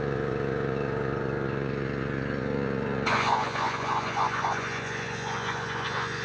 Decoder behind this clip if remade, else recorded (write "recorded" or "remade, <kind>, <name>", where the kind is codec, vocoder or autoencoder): remade, vocoder, Vocos